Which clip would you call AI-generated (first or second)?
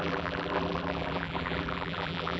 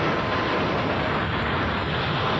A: first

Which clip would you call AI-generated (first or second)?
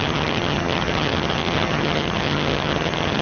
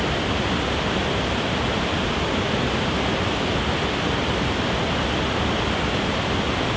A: first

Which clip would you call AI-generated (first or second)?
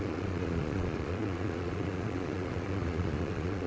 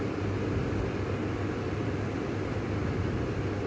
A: first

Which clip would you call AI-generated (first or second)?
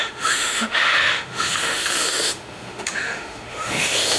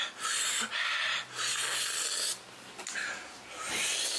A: first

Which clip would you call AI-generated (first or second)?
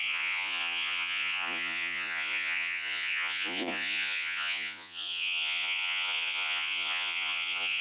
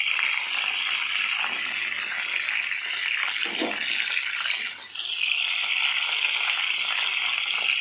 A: first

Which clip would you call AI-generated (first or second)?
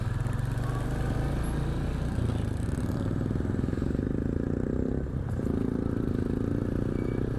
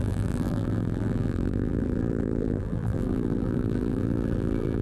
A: second